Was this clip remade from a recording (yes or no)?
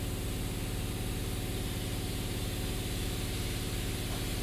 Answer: no